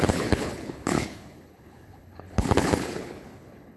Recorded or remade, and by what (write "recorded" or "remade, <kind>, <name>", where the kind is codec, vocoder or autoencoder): remade, codec, HILCodec